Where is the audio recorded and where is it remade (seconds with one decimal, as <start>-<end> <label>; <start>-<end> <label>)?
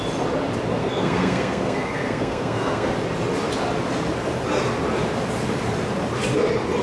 0.0-0.8 recorded; 0.8-2.9 remade; 2.9-6.8 recorded